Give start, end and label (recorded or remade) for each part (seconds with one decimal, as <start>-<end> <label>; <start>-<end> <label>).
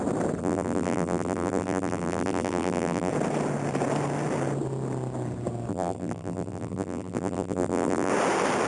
0.0-0.4 recorded; 0.4-3.1 remade; 3.1-5.7 recorded; 5.7-8.1 remade; 8.1-8.7 recorded